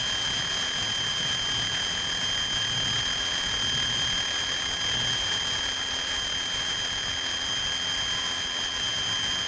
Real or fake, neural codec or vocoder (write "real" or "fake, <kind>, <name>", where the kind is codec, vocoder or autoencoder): real